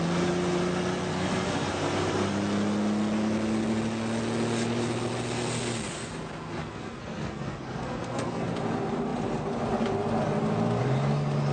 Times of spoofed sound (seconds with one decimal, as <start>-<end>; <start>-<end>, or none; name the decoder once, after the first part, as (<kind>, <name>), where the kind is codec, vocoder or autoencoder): 1.1-1.7 (codec, SNAC); 6.6-8.5

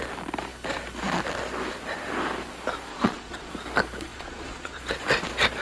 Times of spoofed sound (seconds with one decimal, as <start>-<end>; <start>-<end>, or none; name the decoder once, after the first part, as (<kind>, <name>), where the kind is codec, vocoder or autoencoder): 2.9-3.5 (vocoder, Vocos); 4.1-4.8

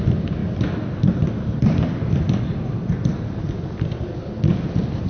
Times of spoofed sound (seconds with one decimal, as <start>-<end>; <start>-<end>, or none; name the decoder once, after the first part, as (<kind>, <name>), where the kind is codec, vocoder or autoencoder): none